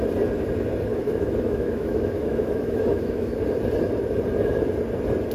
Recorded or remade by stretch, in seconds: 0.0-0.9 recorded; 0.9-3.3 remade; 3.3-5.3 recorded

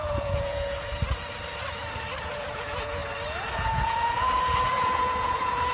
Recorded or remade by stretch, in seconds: 0.0-0.9 remade; 0.9-2.2 recorded; 2.2-3.0 remade; 3.0-3.5 recorded; 3.5-5.7 remade

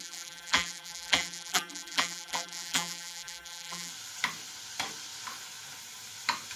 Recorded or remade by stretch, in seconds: 0.0-3.9 remade; 3.9-6.6 recorded

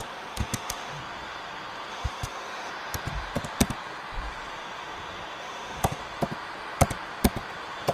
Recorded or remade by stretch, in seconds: 0.0-1.0 remade; 1.0-1.9 recorded; 1.9-2.7 remade; 2.7-5.4 recorded; 5.4-6.0 remade; 6.0-7.9 recorded